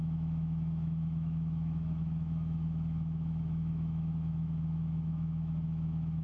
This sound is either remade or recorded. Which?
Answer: remade